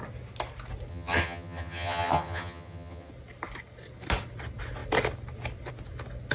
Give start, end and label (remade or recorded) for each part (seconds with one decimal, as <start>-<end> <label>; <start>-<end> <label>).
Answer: 0.0-0.9 recorded; 0.9-3.1 remade; 3.1-6.3 recorded